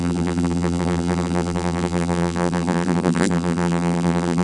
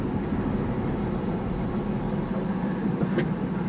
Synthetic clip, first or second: first